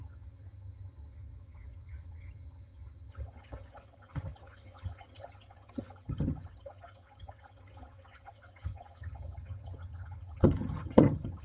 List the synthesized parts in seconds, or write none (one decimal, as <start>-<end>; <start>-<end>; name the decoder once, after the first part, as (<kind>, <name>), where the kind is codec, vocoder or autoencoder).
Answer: 0.0-11.4 (vocoder, HiFi-GAN)